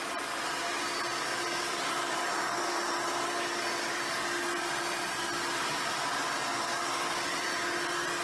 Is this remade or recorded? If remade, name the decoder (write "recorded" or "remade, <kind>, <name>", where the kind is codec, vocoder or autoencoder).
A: recorded